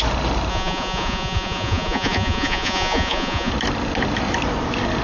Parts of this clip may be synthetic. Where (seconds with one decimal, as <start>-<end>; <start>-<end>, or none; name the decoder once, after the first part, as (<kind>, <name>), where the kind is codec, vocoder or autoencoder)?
0.5-3.5 (vocoder, Vocos)